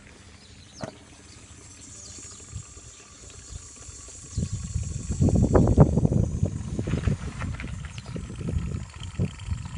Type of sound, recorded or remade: recorded